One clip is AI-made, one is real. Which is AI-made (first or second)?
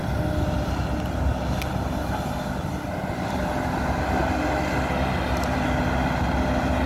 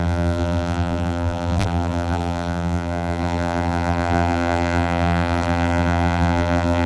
second